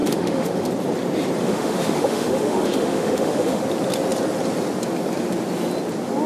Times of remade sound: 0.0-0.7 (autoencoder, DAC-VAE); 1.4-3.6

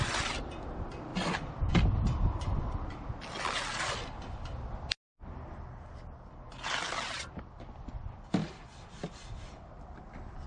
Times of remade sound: none

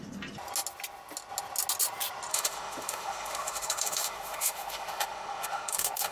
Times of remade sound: 2.3-6.1 (autoencoder, DAC-VAE)